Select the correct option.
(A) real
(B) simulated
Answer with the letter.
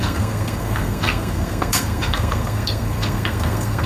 B